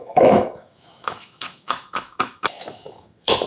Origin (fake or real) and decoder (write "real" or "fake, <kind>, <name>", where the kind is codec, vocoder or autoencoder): fake, autoencoder, DAC-VAE